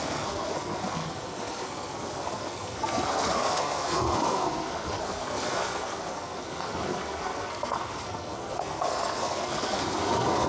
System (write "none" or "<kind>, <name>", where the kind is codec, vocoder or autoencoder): codec, SNAC